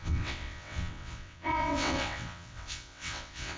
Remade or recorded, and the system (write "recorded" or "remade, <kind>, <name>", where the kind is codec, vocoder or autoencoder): remade, vocoder, WaveNeXt